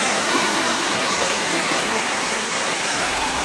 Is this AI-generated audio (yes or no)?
yes